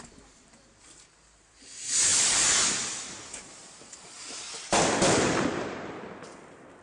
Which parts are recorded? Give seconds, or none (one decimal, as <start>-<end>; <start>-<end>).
0.0-2.1; 6.2-6.8